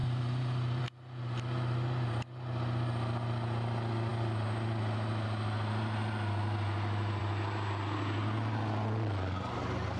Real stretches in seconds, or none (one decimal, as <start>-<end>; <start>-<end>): 0.8-10.0